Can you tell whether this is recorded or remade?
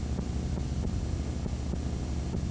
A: recorded